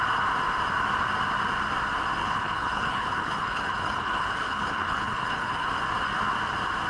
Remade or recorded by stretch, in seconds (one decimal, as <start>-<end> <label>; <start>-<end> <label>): 0.0-2.2 recorded; 2.2-5.7 remade; 5.7-6.9 recorded